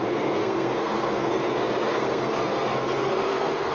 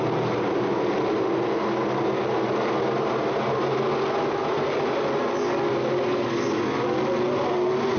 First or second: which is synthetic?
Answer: first